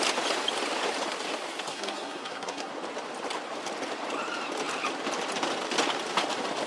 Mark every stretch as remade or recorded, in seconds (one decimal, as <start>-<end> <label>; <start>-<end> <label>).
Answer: 0.0-1.7 recorded; 1.7-2.7 remade; 2.7-6.7 recorded